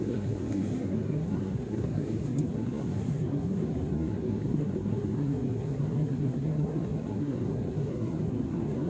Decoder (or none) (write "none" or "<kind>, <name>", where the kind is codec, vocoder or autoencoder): codec, SNAC